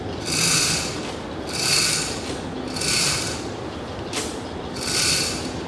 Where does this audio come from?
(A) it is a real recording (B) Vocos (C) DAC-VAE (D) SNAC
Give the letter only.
A